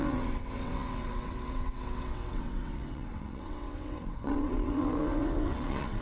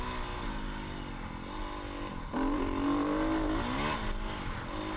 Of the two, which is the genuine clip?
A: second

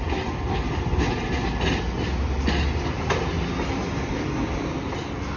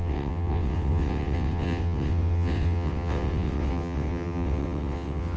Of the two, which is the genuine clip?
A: first